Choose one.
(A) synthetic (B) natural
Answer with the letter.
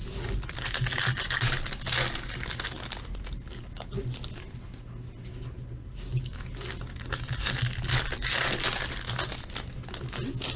B